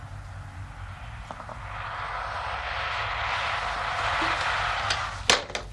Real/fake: real